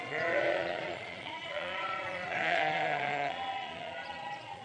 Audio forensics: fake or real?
fake